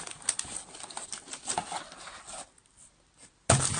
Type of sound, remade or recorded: recorded